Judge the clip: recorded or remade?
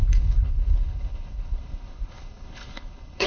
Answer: remade